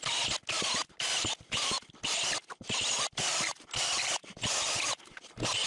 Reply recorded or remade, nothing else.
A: recorded